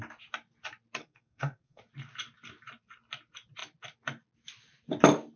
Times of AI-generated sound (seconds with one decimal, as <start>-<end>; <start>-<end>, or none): 1.0-1.8